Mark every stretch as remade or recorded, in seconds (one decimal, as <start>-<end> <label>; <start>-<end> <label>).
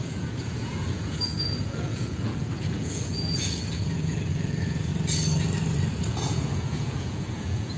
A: 0.0-4.9 remade; 4.9-6.1 recorded; 6.1-7.8 remade